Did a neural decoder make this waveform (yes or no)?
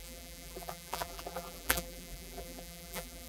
yes